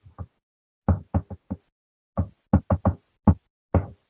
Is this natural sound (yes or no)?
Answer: yes